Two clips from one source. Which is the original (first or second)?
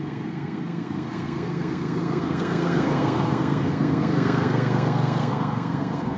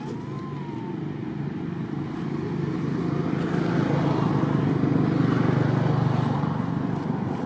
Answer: second